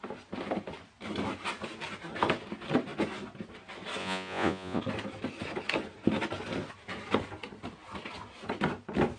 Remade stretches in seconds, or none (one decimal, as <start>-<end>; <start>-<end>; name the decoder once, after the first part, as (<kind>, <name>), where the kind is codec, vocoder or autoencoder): 4.0-4.8 (vocoder, Vocos)